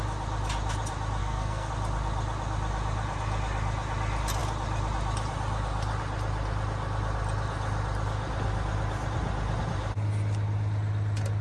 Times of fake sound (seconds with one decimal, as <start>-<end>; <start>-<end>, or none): 1.2-1.7